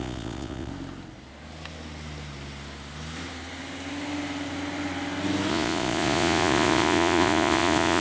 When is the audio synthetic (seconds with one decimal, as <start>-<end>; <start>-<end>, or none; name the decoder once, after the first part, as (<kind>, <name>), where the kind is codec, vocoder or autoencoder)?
0.0-0.7 (vocoder, Vocos); 5.5-8.0